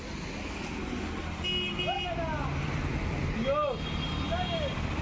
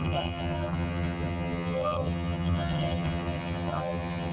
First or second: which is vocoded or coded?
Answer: second